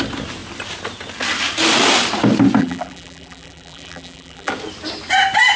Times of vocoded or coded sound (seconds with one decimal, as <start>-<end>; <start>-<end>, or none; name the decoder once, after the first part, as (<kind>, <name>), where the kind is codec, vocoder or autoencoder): 2.6-4.5 (vocoder, BigVGAN v2)